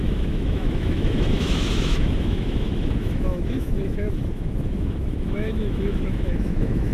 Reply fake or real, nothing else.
fake